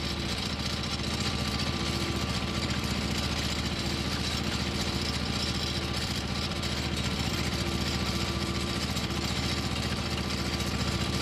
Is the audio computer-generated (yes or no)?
yes